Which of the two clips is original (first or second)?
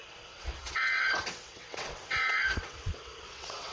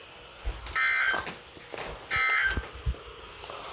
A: second